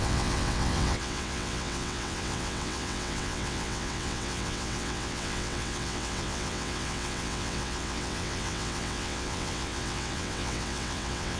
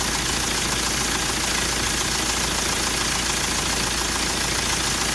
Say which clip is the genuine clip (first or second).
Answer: second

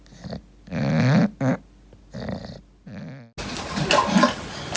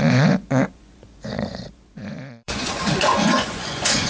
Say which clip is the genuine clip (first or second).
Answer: first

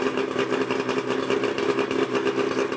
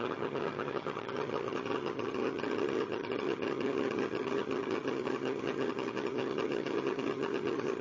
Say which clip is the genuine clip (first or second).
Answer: first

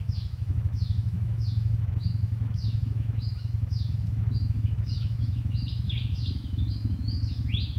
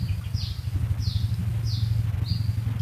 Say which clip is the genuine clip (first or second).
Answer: second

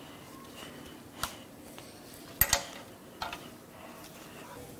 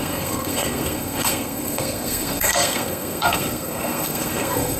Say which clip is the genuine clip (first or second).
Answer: first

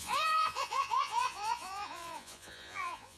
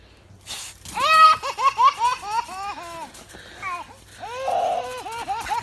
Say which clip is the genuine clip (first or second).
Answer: second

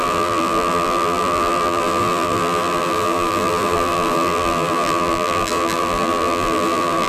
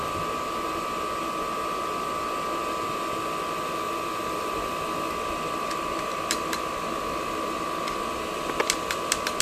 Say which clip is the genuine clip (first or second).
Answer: second